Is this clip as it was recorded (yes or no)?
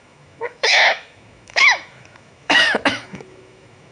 no